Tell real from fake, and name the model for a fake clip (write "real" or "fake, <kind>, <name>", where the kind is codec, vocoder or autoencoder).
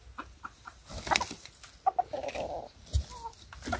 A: real